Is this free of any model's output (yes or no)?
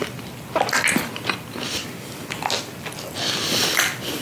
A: yes